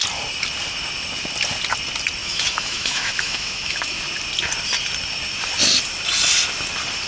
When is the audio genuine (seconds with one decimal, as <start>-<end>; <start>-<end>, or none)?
0.0-2.2; 4.0-7.1